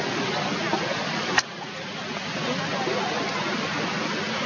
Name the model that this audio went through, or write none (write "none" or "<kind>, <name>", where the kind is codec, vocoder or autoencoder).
none